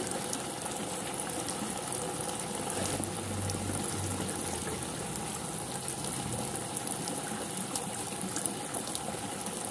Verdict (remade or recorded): recorded